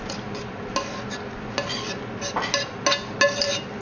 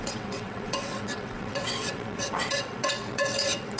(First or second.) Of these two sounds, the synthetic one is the second